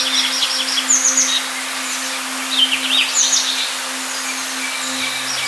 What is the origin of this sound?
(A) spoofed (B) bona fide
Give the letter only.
B